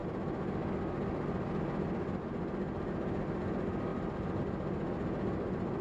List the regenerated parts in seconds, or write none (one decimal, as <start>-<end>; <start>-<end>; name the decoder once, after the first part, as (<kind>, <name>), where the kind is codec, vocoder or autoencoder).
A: 3.9-4.4 (vocoder, BigVGAN v2)